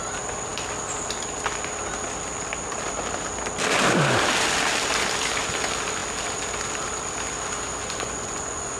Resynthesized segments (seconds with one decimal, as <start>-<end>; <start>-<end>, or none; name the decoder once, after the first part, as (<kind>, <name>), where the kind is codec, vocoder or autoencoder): 7.8-8.8 (vocoder, Vocos)